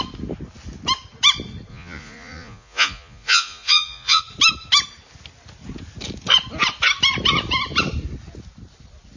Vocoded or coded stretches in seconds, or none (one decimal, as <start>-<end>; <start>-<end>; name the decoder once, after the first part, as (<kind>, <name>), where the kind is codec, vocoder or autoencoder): 1.7-4.2 (vocoder, Vocos)